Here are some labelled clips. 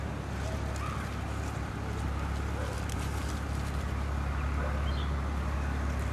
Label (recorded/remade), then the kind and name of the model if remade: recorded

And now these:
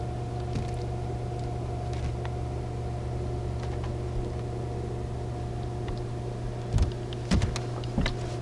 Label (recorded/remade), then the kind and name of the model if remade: recorded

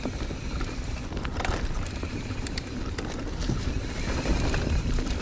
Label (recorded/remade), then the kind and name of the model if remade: recorded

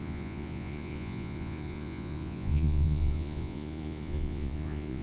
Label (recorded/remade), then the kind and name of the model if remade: remade, vocoder, Vocos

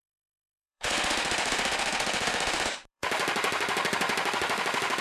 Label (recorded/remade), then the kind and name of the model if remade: remade, autoencoder, DAC-VAE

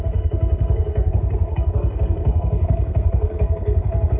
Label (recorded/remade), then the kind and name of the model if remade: remade, codec, SNAC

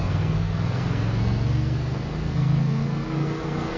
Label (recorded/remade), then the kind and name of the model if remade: remade, codec, SNAC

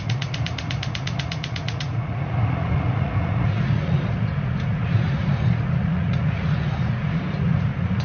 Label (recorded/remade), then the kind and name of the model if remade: remade, vocoder, Vocos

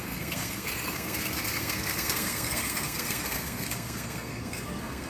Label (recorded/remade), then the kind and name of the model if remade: remade, codec, SNAC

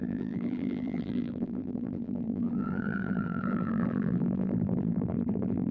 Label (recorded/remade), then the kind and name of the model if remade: remade, vocoder, BigVGAN v2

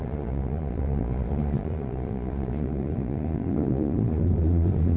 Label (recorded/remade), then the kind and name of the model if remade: remade, vocoder, Vocos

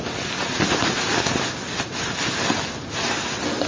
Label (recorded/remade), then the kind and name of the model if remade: recorded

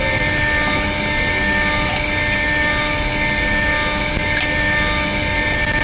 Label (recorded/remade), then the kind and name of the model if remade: recorded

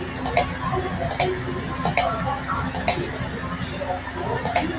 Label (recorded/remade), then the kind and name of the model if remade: recorded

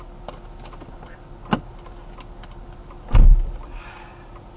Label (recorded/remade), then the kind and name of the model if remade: recorded